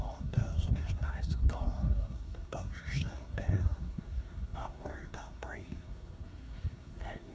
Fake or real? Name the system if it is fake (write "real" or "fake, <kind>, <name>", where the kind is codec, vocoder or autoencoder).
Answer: fake, codec, SNAC